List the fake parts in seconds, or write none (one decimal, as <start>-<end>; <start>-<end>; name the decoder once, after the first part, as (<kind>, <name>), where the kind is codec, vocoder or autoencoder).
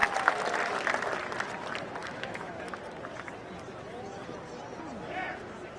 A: 2.0-2.8 (autoencoder, DAC-VAE)